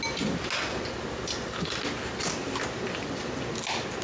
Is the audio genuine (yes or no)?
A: yes